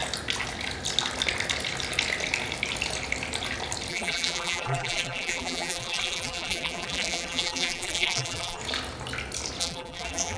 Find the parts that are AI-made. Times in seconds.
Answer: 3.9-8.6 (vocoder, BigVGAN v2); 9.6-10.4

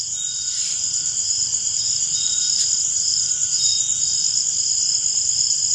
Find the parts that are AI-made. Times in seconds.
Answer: 0.0-3.7 (vocoder, BigVGAN v2)

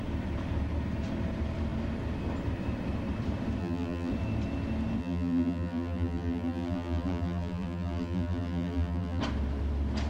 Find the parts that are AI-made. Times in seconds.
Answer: 3.6-4.1 (vocoder, BigVGAN v2); 5.0-9.2

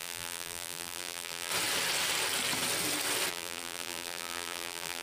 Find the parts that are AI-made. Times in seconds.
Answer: 0.0-1.5 (vocoder, BigVGAN v2); 3.3-5.0

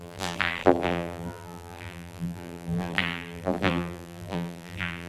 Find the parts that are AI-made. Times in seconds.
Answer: 0.0-5.1 (vocoder, BigVGAN v2)

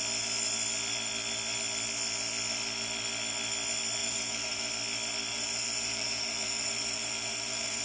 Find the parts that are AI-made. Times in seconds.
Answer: 4.0-4.7 (vocoder, BigVGAN v2); 5.3-7.8

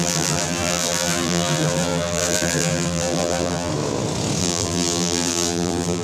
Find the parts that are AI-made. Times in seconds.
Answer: 0.0-3.7 (vocoder, BigVGAN v2); 4.4-6.0

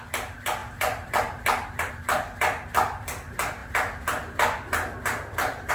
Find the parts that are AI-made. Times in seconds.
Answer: none